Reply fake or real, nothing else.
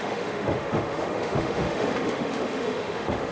fake